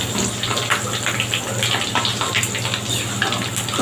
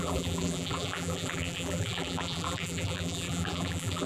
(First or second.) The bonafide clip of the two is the first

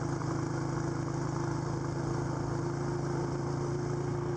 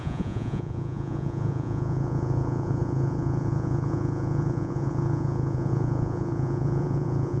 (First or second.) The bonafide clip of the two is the first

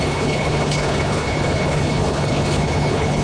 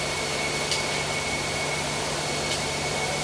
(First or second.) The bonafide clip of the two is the second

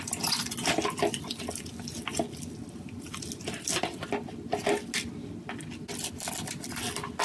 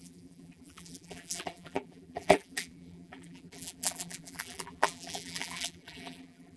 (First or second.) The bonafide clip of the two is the first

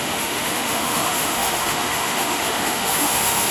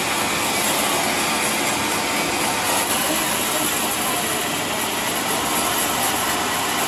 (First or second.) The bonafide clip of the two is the second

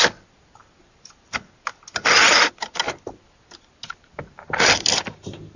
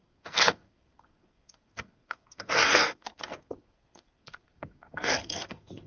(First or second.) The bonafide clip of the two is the first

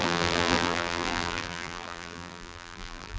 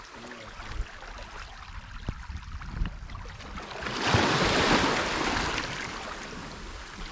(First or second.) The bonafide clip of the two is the second